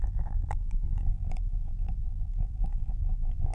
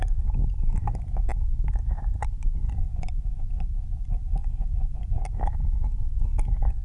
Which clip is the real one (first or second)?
second